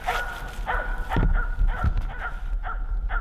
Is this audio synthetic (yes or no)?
no